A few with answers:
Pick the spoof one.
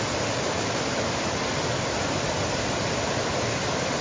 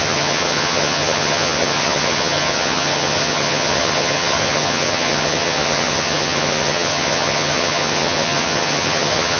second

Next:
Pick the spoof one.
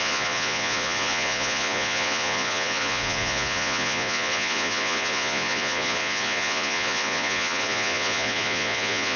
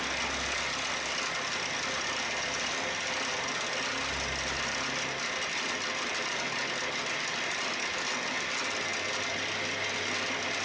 first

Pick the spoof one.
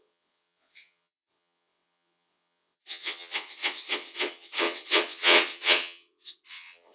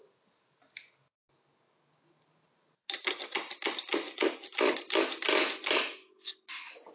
first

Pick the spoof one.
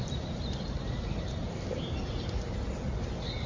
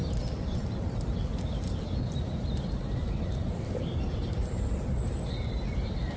second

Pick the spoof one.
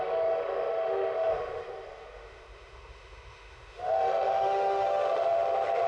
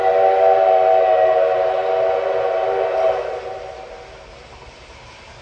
first